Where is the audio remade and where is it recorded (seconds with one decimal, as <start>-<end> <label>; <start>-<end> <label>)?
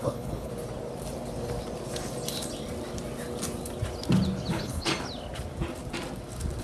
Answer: 0.0-0.5 remade; 0.5-4.5 recorded; 4.5-4.9 remade; 4.9-6.6 recorded